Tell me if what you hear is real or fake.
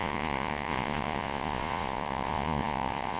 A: fake